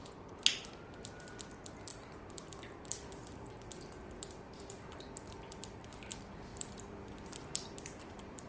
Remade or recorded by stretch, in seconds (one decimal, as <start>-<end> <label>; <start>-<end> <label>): 0.0-1.9 recorded; 1.9-3.5 remade; 3.5-6.5 recorded; 6.5-8.5 remade